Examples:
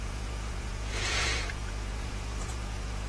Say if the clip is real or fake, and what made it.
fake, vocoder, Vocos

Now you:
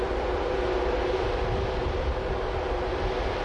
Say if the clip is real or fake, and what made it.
real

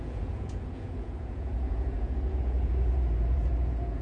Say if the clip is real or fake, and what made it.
fake, vocoder, Vocos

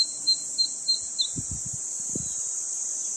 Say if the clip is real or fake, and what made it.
real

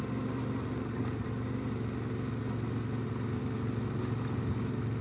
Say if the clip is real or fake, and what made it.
real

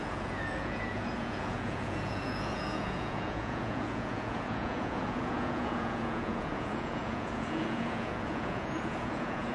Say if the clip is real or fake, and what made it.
fake, vocoder, Vocos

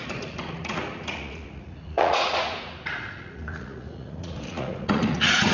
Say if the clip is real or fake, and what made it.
fake, vocoder, Vocos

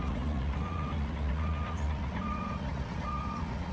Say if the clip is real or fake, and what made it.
fake, vocoder, Vocos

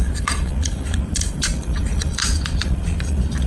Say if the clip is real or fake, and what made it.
fake, vocoder, Vocos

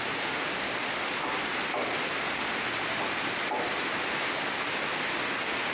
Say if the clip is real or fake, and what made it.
real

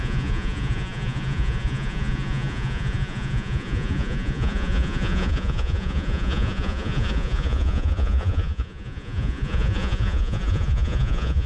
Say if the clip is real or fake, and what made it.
fake, vocoder, Vocos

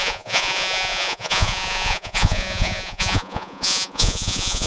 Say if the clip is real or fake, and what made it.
fake, vocoder, Vocos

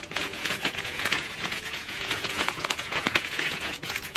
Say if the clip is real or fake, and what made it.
fake, vocoder, Vocos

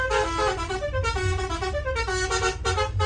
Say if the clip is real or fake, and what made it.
real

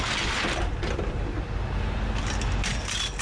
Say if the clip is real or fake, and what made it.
real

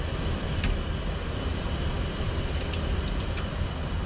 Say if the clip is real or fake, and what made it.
real